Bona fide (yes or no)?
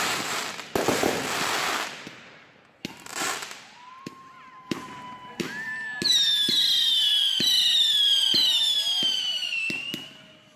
yes